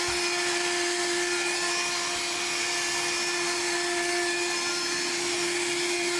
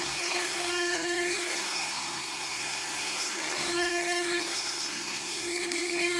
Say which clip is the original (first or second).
first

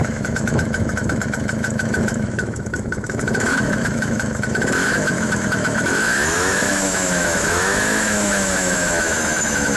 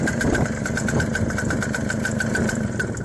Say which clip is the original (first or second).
second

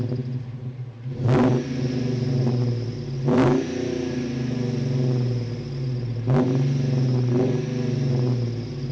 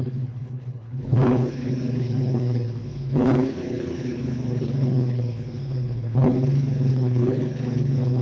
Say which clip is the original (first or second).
first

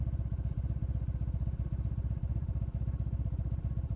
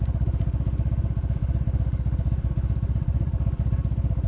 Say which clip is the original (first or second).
first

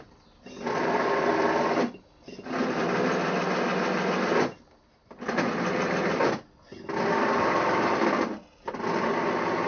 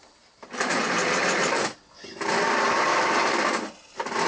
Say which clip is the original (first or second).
first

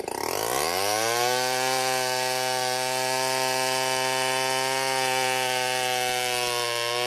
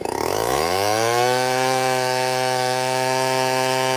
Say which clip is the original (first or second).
first